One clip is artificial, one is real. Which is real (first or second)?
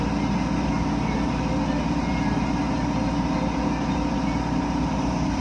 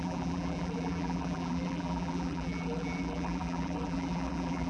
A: first